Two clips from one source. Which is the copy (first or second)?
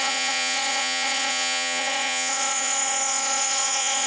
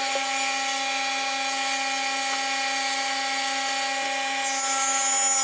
first